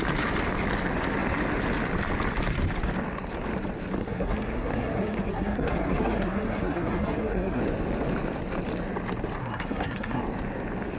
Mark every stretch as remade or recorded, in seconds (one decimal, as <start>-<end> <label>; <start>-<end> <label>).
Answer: 0.0-4.0 recorded; 4.0-7.6 remade; 7.6-9.4 recorded; 9.4-10.2 remade; 10.2-11.0 recorded